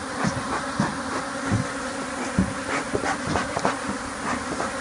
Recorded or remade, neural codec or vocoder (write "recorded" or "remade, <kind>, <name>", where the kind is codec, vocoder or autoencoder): recorded